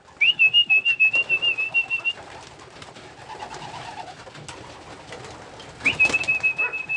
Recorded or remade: recorded